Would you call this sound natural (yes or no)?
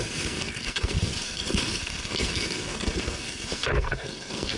no